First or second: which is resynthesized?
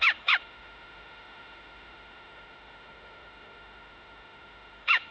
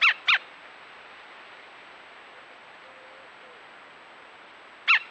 first